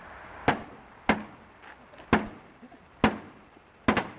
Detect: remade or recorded recorded